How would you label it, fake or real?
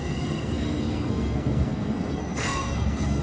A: fake